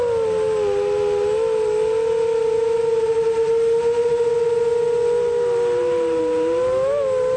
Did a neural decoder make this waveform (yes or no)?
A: no